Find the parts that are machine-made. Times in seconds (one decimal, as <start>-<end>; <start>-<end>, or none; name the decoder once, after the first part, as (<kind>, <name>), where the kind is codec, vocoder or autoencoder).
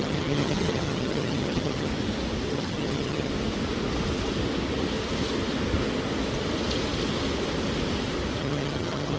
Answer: 0.0-1.9 (vocoder, HiFi-GAN); 2.5-3.3; 8.4-9.2